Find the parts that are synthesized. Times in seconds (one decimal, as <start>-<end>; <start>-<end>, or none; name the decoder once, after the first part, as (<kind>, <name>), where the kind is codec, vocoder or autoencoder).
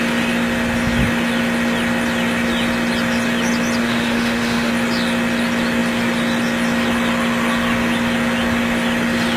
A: 3.8-4.7 (autoencoder, DAC-VAE)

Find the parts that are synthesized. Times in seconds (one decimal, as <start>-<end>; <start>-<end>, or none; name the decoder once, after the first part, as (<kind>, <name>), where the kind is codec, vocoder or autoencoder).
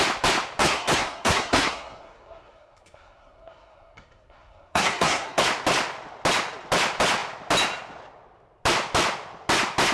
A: 0.6-5.4 (codec, SNAC)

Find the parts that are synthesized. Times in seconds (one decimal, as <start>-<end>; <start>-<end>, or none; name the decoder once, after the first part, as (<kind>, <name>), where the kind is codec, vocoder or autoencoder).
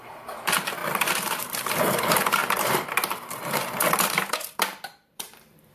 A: 0.0-5.7 (vocoder, BigVGAN v2)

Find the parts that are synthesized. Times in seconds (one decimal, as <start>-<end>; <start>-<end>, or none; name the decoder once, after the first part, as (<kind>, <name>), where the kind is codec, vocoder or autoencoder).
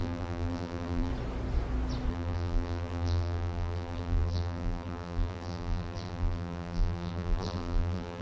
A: 0.0-1.1 (vocoder, BigVGAN v2); 2.1-8.2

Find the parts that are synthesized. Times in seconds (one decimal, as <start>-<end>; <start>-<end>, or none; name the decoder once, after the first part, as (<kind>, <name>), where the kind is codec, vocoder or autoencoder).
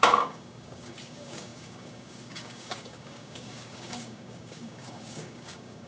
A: 0.0-5.9 (codec, DAC)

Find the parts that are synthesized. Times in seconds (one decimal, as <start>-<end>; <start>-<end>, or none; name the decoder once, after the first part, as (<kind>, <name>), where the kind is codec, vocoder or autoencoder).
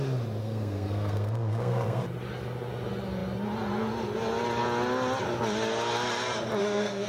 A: 0.4-2.0 (codec, SNAC); 6.6-7.1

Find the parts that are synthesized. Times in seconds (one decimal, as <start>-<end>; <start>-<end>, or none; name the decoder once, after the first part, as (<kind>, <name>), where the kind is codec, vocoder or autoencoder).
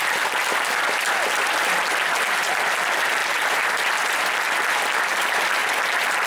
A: none